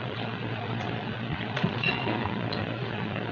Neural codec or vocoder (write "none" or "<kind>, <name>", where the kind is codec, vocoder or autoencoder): vocoder, Vocos